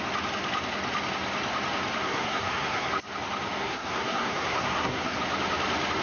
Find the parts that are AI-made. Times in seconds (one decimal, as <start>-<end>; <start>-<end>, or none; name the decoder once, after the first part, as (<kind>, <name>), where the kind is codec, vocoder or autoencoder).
2.0-2.9 (codec, SNAC); 3.6-5.2